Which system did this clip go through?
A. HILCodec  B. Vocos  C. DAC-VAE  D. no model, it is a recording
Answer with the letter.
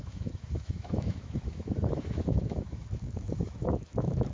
C